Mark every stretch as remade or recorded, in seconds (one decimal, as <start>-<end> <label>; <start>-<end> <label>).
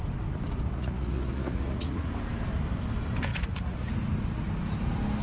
0.0-0.7 recorded; 0.7-2.1 remade; 2.1-3.3 recorded; 3.3-3.9 remade; 3.9-5.2 recorded